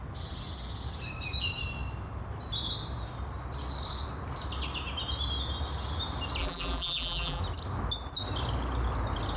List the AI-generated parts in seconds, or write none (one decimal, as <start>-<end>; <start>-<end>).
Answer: 6.4-7.4